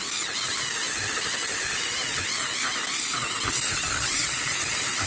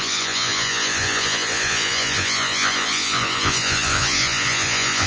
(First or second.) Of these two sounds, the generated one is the second